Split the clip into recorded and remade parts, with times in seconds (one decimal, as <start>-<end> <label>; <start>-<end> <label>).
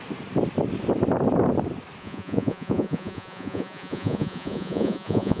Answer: 0.0-2.0 recorded; 2.0-5.4 remade